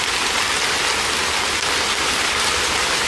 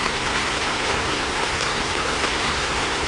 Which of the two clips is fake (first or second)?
second